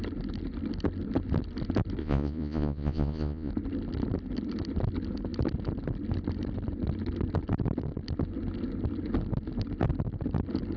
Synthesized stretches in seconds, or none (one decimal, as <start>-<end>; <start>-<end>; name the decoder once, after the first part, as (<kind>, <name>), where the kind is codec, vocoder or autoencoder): 2.0-3.5 (vocoder, Vocos)